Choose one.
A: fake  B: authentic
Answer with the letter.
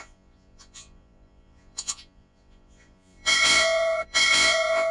A